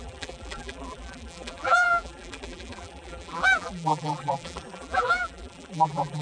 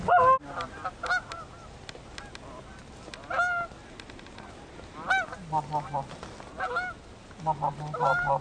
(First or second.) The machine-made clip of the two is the first